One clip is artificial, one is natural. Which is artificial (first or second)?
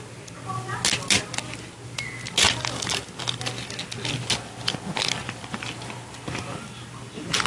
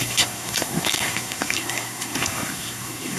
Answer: second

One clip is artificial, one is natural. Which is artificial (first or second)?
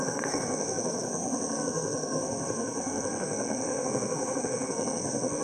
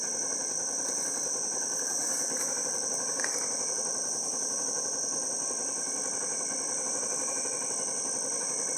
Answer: first